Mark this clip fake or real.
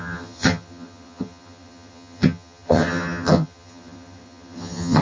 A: fake